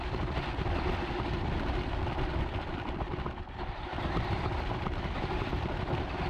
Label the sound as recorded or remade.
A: remade